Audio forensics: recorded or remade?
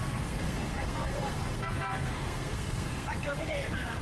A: remade